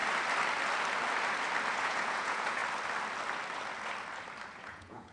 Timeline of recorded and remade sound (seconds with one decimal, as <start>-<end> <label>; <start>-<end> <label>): 0.0-1.8 recorded; 1.8-2.6 remade; 2.6-4.6 recorded; 4.6-5.1 remade

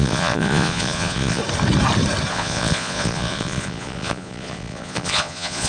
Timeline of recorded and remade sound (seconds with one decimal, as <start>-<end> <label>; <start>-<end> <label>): 0.0-1.4 remade; 1.4-2.3 recorded; 2.3-5.7 remade